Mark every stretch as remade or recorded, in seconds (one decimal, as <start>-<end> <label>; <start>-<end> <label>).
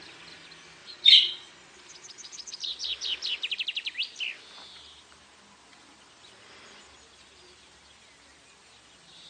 0.0-0.8 recorded; 0.8-1.7 remade; 1.7-9.3 recorded